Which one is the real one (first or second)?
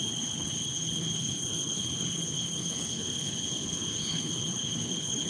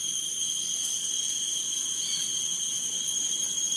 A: second